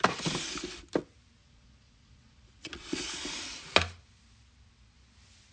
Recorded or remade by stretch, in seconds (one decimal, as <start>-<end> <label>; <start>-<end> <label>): 0.0-1.4 recorded; 1.4-3.0 remade; 3.0-5.5 recorded